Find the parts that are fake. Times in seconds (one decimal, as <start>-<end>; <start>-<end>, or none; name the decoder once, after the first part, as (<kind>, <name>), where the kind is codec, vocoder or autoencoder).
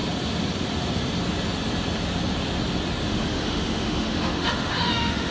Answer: 3.1-5.3 (autoencoder, DAC-VAE)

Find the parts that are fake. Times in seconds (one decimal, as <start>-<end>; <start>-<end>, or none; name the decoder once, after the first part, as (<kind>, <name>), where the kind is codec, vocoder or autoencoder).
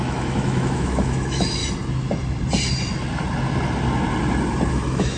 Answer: 0.0-1.6 (autoencoder, DAC-VAE); 4.7-5.2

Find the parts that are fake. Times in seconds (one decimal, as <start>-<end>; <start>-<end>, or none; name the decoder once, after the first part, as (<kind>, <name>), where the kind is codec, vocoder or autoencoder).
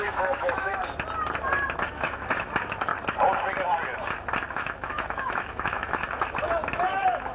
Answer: 0.0-0.8 (autoencoder, DAC-VAE); 1.8-2.9; 4.5-7.3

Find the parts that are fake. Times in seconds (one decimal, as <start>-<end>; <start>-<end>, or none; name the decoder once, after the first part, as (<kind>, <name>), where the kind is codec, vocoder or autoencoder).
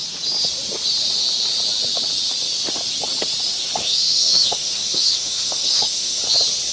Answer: 3.8-6.2 (autoencoder, DAC-VAE)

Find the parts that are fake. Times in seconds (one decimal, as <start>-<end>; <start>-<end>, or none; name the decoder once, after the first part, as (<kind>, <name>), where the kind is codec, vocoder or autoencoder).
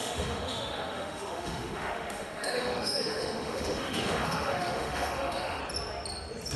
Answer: 0.0-5.6 (autoencoder, DAC-VAE)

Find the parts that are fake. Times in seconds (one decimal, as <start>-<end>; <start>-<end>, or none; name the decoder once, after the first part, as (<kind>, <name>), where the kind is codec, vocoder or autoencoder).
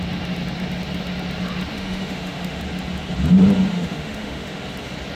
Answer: 1.7-2.6 (autoencoder, DAC-VAE); 3.7-4.6